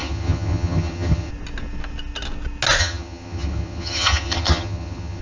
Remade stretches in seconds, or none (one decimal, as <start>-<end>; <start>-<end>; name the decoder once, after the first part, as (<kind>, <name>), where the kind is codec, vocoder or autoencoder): 0.0-1.3 (vocoder, HiFi-GAN); 2.8-5.2